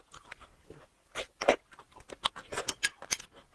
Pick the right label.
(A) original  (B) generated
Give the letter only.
A